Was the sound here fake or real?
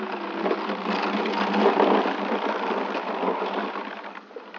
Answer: real